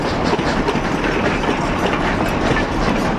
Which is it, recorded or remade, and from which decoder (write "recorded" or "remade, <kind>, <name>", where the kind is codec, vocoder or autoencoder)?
recorded